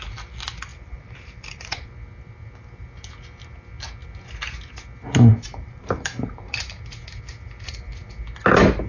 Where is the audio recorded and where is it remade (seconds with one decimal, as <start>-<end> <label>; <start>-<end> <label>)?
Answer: 0.0-0.7 recorded; 0.7-1.9 remade; 1.9-5.3 recorded; 5.3-6.8 remade; 6.8-8.9 recorded